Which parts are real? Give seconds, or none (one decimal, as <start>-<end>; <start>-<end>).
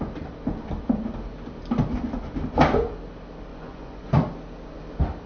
0.0-3.5; 4.1-5.3